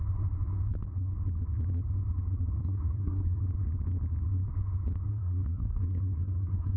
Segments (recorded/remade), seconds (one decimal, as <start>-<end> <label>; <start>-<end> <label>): 0.0-2.6 recorded; 2.6-3.4 remade; 3.4-5.1 recorded; 5.1-6.8 remade